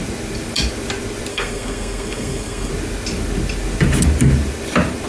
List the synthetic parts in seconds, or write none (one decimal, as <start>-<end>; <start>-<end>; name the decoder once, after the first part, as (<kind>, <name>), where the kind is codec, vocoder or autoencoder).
1.3-2.7 (codec, SNAC)